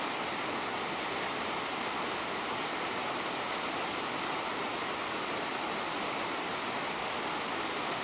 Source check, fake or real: real